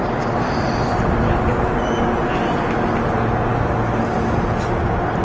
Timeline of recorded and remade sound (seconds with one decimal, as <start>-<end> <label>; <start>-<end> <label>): 0.0-5.2 recorded